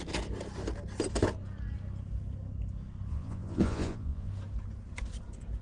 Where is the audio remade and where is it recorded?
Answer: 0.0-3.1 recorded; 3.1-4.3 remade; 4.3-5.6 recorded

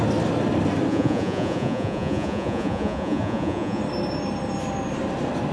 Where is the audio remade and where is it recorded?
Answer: 0.0-0.9 recorded; 0.9-3.8 remade; 3.8-5.5 recorded

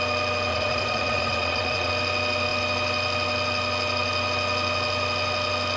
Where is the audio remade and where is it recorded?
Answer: 0.0-0.5 recorded; 0.5-1.9 remade; 1.9-5.8 recorded

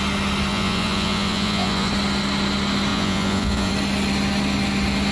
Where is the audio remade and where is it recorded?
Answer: 0.0-0.5 recorded; 0.5-1.9 remade; 1.9-2.9 recorded; 2.9-3.7 remade; 3.7-5.1 recorded

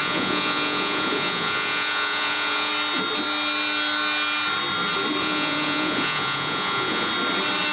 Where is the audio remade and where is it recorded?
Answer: 0.0-2.7 remade; 2.7-5.2 recorded; 5.2-7.1 remade; 7.1-7.7 recorded